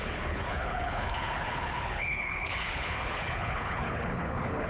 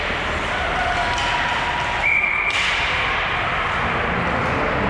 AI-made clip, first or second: first